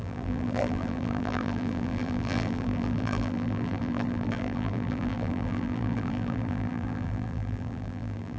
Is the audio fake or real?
fake